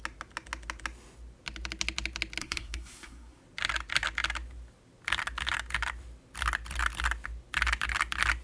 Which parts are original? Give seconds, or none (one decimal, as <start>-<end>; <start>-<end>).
0.0-2.4; 3.4-8.4